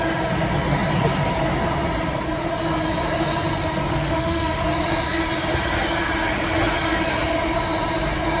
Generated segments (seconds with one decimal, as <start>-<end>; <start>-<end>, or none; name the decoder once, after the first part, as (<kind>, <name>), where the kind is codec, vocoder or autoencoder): 3.9-4.6 (autoencoder, DAC-VAE)